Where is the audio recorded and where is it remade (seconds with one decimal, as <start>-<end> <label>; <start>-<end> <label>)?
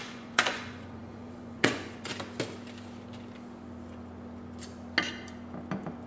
0.0-2.1 remade; 2.1-6.1 recorded